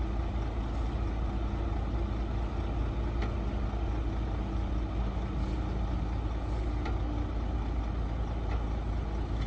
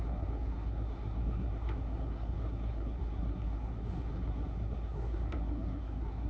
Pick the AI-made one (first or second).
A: second